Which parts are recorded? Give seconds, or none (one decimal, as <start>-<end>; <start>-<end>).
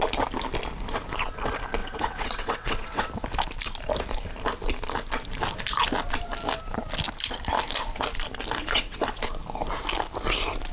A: 0.0-1.8; 3.1-8.6; 9.3-10.7